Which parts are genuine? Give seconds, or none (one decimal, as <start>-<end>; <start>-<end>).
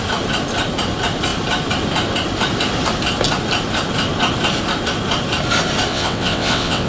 0.0-5.9